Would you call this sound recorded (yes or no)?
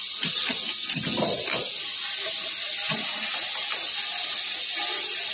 yes